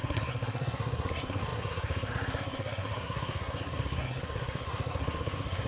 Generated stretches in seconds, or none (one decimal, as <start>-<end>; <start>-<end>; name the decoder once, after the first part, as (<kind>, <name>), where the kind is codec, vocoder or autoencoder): 0.0-5.7 (codec, SNAC)